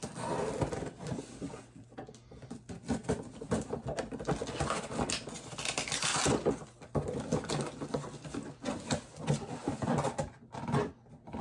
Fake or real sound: real